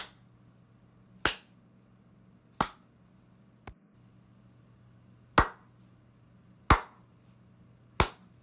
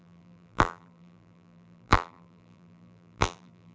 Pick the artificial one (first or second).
second